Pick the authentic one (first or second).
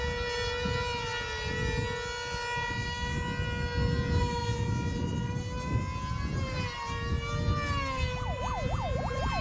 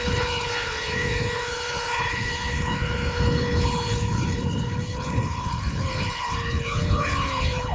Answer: first